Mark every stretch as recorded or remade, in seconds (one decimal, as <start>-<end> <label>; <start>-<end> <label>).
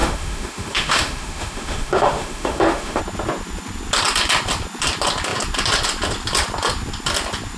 0.0-3.0 remade; 3.0-7.6 recorded